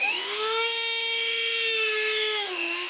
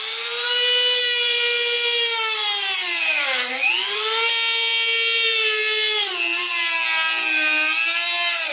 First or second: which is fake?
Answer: first